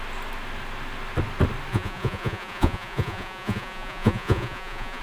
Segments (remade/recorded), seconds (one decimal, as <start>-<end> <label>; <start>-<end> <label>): 0.0-1.7 recorded; 1.7-5.0 remade